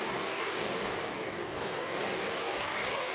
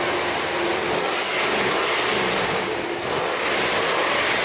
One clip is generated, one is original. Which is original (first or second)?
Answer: second